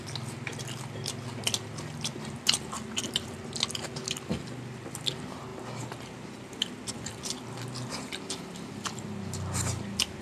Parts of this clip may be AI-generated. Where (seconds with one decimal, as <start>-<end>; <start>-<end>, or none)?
none